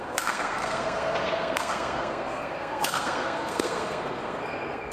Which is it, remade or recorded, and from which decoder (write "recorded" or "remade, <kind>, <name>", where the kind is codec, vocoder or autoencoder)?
remade, codec, SNAC